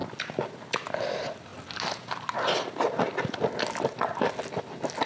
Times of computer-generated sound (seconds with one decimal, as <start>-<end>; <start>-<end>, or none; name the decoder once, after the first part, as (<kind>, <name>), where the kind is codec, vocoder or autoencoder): none